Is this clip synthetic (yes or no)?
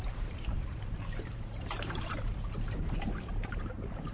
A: yes